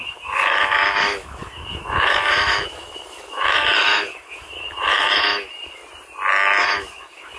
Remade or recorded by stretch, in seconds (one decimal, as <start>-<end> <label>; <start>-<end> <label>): 0.0-5.8 remade; 5.8-6.6 recorded; 6.6-7.4 remade